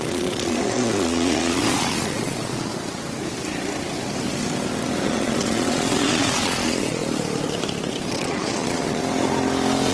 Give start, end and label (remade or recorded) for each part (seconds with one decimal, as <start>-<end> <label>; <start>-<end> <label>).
0.0-2.7 remade; 2.7-5.0 recorded; 5.0-7.0 remade; 7.0-8.1 recorded; 8.1-9.0 remade; 9.0-9.9 recorded